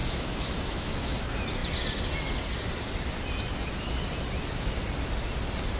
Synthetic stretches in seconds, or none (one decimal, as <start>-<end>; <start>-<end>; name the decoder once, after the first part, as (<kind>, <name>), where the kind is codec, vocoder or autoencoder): 0.0-1.2 (autoencoder, DAC-VAE)